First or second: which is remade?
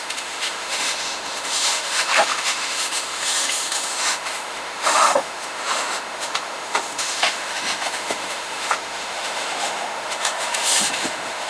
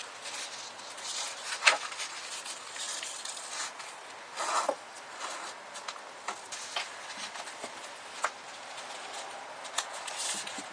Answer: first